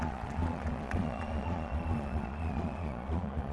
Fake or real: fake